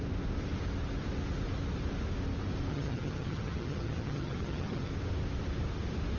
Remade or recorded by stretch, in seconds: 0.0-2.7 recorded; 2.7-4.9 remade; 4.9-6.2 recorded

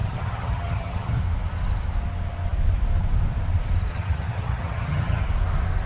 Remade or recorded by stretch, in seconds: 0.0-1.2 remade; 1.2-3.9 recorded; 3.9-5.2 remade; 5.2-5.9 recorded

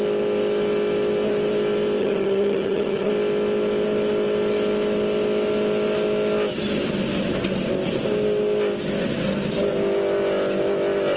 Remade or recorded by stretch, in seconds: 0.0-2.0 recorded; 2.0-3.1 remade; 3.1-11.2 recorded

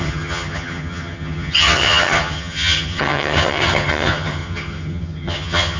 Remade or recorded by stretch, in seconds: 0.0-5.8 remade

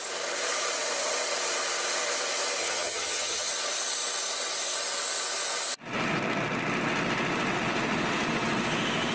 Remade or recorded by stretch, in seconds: 0.0-2.6 recorded; 2.6-3.5 remade; 3.5-9.1 recorded

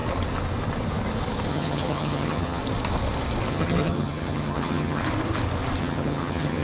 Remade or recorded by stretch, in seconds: 0.0-1.5 recorded; 1.5-2.6 remade; 2.6-3.5 recorded; 3.5-5.0 remade; 5.0-5.8 recorded; 5.8-6.6 remade

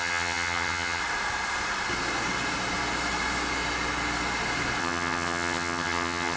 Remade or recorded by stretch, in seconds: 0.0-1.0 remade; 1.0-4.8 recorded; 4.8-6.4 remade